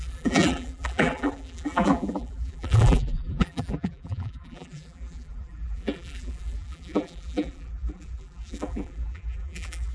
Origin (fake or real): fake